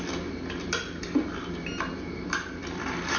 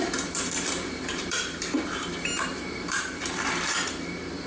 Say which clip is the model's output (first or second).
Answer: second